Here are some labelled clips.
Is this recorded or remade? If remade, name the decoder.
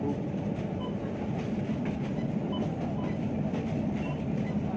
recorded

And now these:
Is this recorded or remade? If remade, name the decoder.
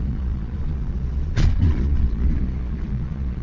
remade, vocoder, Vocos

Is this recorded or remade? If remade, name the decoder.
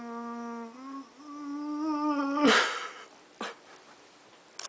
recorded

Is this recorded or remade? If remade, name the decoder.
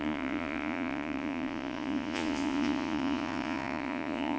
remade, vocoder, Vocos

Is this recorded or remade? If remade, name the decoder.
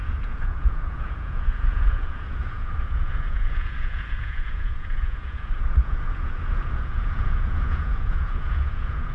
remade, vocoder, Vocos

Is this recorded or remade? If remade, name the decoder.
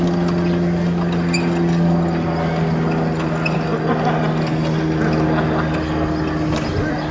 recorded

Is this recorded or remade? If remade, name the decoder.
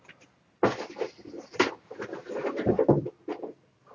recorded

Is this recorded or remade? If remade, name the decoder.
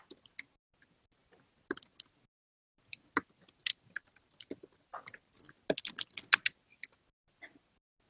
recorded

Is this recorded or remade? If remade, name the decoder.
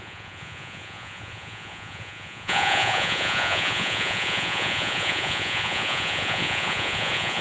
remade, vocoder, Vocos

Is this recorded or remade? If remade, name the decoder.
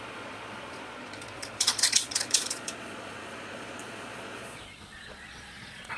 remade, vocoder, Vocos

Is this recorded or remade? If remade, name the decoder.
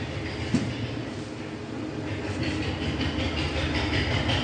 recorded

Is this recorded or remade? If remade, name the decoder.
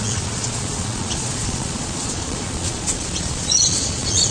remade, vocoder, Vocos